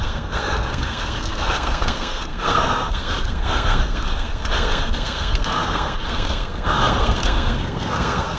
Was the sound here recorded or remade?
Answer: remade